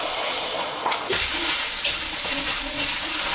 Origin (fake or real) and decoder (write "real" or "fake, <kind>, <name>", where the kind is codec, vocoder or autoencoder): fake, vocoder, Vocos